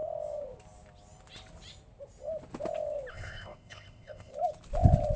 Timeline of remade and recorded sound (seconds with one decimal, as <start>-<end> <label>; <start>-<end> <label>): 0.0-3.1 recorded; 3.1-4.3 remade; 4.3-5.2 recorded